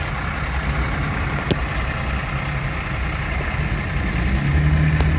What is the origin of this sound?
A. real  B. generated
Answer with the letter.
A